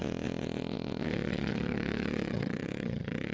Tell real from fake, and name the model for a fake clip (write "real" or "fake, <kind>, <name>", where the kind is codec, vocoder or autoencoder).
fake, vocoder, WaveNeXt